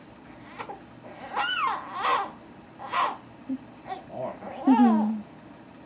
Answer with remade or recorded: recorded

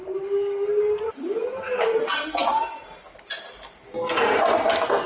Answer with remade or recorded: recorded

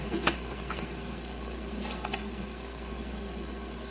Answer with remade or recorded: remade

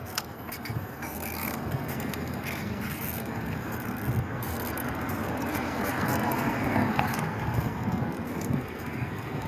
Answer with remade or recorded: remade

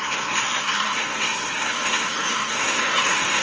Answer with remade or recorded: remade